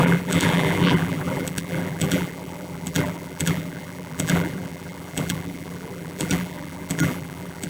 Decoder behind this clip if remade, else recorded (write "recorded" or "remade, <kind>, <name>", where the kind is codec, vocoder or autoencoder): remade, vocoder, BigVGAN v2